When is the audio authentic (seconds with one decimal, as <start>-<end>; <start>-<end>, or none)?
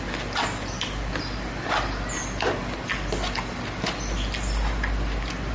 0.0-5.5